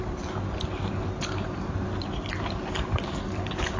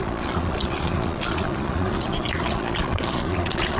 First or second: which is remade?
second